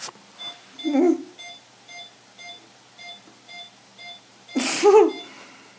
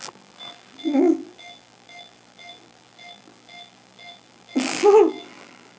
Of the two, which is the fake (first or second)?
second